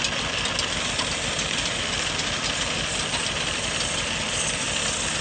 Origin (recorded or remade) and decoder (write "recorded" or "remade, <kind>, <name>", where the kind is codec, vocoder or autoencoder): recorded